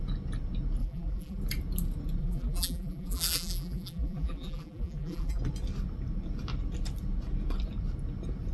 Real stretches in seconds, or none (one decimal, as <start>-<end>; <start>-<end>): 0.0-0.8; 1.4-2.2; 5.4-8.5